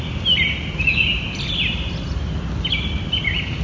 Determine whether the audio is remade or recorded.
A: recorded